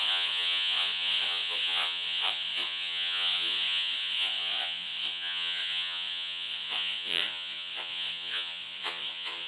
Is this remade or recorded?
remade